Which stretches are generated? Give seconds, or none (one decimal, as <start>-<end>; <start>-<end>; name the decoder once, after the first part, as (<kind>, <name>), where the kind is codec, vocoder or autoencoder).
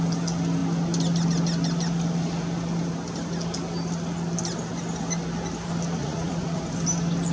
6.0-6.6 (vocoder, Vocos)